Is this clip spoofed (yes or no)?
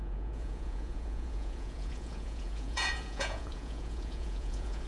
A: yes